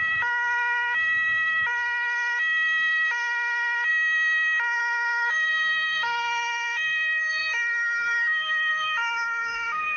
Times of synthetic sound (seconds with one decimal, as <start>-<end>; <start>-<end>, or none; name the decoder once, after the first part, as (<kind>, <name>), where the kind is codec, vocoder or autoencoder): 0.0-3.9 (autoencoder, DAC-VAE); 4.8-10.0